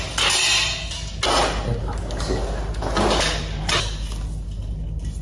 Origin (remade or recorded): recorded